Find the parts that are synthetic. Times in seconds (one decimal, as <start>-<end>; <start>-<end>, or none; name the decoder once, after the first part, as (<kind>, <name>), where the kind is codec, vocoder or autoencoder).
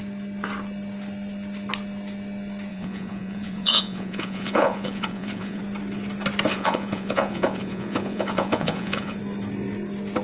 2.7-5.6 (vocoder, Vocos); 6.5-9.2